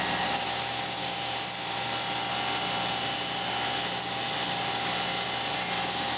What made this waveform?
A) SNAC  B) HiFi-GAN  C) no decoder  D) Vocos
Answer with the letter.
C